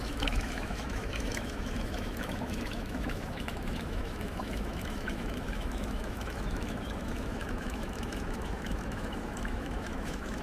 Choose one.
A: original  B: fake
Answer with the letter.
B